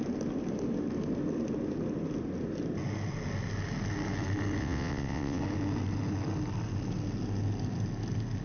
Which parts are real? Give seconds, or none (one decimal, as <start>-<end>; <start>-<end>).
0.0-4.6; 5.4-8.4